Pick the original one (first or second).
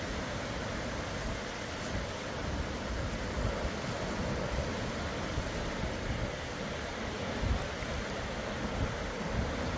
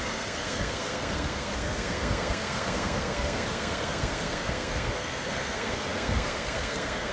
first